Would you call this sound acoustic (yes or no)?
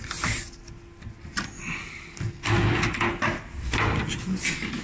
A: yes